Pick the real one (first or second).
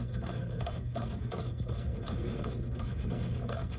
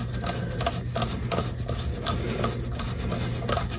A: second